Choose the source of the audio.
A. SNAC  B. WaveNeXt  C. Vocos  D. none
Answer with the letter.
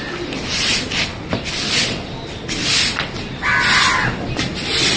D